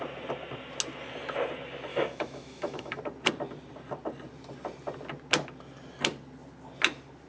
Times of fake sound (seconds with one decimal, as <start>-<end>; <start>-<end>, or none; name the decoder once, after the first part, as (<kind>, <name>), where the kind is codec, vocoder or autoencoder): 1.9-3.0 (autoencoder, DAC-VAE)